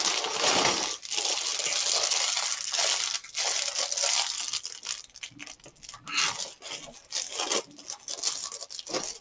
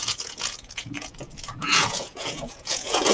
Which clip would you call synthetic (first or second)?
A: second